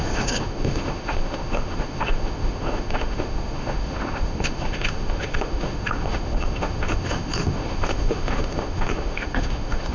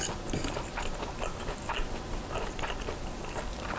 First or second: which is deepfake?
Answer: first